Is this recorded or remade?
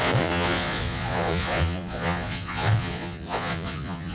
remade